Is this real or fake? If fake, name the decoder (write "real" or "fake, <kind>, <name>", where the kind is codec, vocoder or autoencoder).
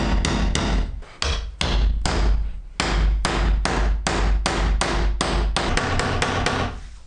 real